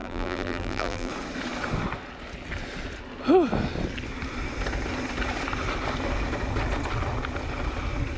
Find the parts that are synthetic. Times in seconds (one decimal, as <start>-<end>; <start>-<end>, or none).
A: 0.0-1.1